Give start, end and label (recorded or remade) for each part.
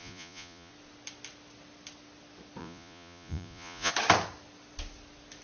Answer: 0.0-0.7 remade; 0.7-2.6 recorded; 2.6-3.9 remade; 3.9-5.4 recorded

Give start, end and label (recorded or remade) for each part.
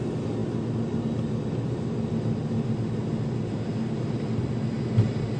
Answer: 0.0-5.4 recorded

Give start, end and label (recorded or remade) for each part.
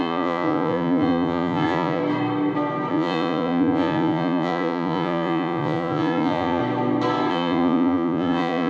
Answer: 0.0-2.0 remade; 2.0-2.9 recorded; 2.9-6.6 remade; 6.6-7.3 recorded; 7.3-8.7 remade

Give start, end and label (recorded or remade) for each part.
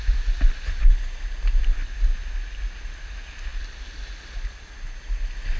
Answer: 0.0-5.6 recorded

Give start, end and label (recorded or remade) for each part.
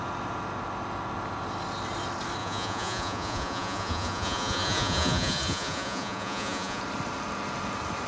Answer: 0.0-2.4 recorded; 2.4-6.8 remade; 6.8-8.1 recorded